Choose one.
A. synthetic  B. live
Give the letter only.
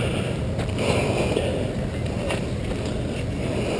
B